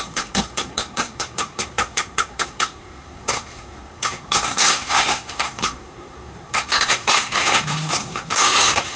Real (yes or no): no